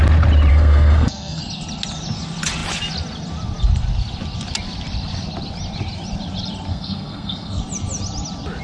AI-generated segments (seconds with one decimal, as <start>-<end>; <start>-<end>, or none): 0.5-1.4; 6.7-7.6